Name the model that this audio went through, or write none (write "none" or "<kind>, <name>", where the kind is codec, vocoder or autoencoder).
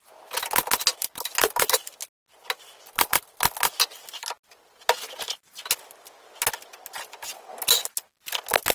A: none